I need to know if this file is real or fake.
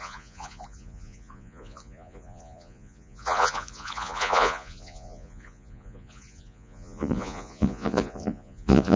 fake